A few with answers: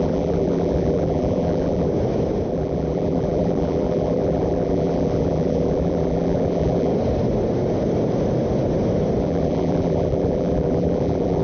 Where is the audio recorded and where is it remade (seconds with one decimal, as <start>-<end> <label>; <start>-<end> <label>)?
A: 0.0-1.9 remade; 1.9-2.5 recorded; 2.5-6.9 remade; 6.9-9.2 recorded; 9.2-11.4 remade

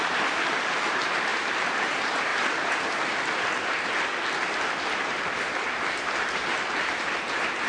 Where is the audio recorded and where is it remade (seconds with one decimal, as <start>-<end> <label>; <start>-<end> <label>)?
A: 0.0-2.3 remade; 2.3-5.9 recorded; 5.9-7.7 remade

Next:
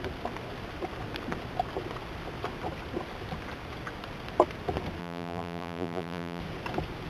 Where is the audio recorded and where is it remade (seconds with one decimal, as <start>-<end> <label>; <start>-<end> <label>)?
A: 0.0-5.0 recorded; 5.0-6.4 remade; 6.4-7.1 recorded

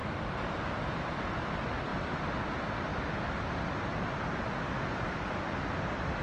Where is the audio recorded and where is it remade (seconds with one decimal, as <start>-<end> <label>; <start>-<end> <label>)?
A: 0.0-0.8 recorded; 0.8-2.9 remade; 2.9-5.2 recorded; 5.2-6.2 remade

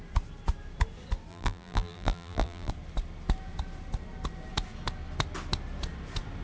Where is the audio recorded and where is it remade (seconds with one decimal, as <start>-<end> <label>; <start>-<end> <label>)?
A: 0.0-1.3 recorded; 1.3-2.7 remade; 2.7-6.4 recorded